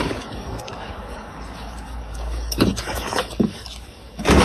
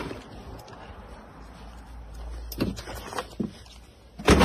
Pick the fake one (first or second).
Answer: first